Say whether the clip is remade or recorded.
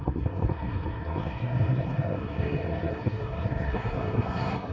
remade